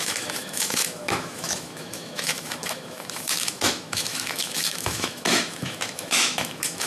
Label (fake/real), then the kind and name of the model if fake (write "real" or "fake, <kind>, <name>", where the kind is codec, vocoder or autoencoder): fake, autoencoder, DAC-VAE